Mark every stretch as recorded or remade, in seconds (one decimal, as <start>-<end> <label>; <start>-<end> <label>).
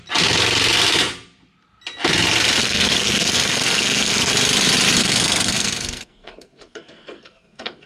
0.0-2.6 recorded; 2.6-4.3 remade; 4.3-5.0 recorded; 5.0-7.9 remade